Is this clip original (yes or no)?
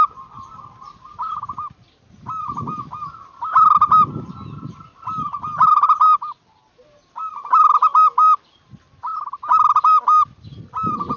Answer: yes